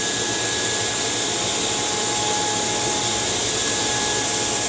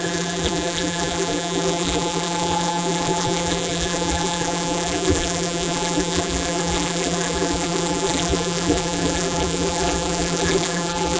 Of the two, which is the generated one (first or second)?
second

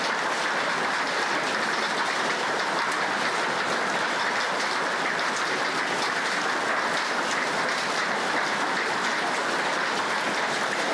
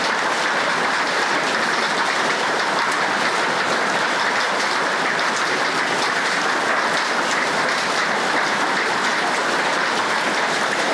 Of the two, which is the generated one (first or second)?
second